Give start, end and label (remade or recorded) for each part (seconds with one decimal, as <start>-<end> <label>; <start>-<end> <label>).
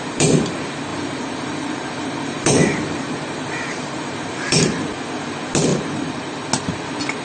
0.0-0.9 recorded; 0.9-4.6 remade; 4.6-5.7 recorded; 5.7-6.5 remade; 6.5-7.2 recorded